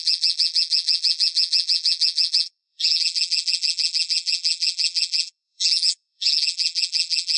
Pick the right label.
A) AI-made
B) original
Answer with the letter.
A